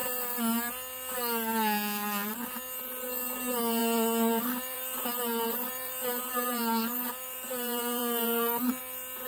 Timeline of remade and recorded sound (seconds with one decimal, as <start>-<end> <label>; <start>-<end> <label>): 0.0-3.8 recorded; 3.8-8.8 remade; 8.8-9.3 recorded